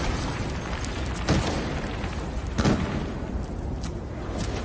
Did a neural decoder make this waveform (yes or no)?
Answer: no